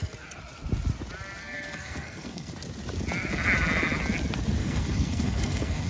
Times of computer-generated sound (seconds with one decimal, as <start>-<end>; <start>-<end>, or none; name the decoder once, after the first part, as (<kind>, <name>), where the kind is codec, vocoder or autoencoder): 1.4-2.5 (codec, SNAC); 4.6-5.9